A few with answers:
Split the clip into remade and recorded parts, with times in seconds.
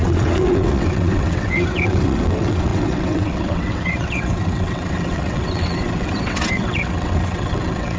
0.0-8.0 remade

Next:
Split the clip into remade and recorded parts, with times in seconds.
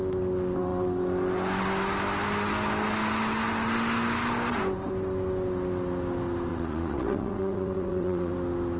0.0-6.5 recorded; 6.5-8.3 remade; 8.3-8.8 recorded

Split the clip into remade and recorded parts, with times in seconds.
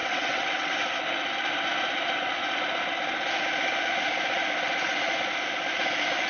0.0-0.8 remade; 0.8-6.3 recorded